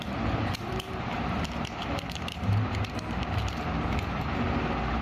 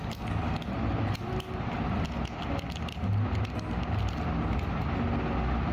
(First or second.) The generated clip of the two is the first